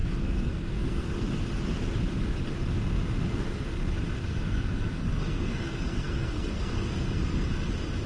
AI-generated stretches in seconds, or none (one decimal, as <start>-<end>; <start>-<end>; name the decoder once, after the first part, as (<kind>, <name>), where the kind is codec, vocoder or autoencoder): 0.0-1.3 (codec, SNAC); 4.2-7.5

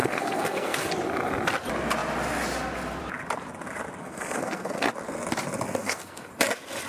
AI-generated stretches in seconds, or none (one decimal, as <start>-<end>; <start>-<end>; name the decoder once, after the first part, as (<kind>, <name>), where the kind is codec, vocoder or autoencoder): 0.0-0.9 (codec, SNAC); 4.0-4.9; 5.8-6.3

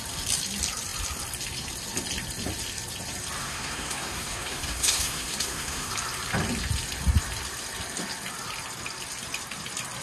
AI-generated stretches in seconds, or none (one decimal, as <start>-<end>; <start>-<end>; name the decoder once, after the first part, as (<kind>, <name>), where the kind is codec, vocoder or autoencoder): 3.4-5.9 (codec, SNAC)

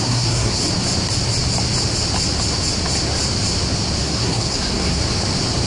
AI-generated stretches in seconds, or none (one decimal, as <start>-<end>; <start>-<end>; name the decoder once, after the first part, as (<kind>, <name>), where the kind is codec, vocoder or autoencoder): 0.0-0.6 (codec, SNAC); 4.0-5.0

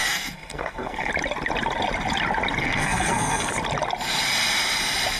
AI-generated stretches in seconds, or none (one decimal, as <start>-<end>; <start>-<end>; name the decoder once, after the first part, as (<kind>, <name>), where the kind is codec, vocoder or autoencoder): 0.0-1.1 (codec, SNAC); 2.6-3.5

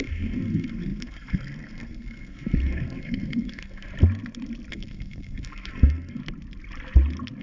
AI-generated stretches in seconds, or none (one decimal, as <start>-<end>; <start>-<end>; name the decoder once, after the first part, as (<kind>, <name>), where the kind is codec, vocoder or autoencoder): 0.0-3.9 (codec, SNAC); 4.7-6.2